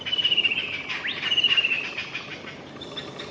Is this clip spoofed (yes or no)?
yes